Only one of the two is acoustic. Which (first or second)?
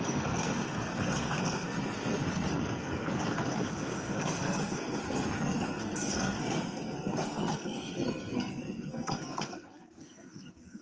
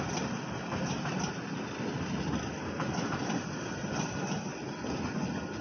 second